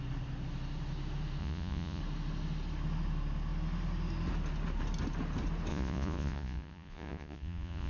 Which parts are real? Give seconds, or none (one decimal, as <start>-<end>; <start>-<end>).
0.0-1.4; 2.0-5.7